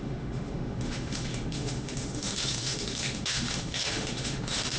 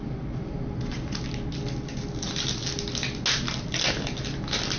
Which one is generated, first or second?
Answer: first